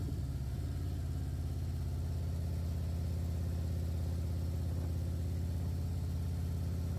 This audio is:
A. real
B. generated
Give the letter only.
A